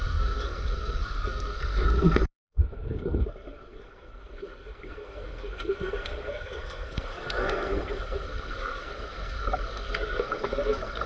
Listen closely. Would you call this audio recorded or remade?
remade